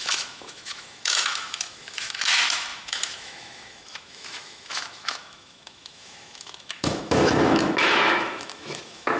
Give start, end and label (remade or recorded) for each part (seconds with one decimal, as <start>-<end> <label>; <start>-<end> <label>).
0.0-9.2 remade